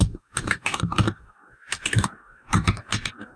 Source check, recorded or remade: remade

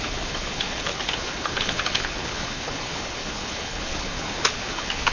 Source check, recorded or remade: remade